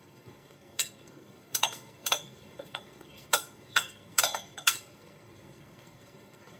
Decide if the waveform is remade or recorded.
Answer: remade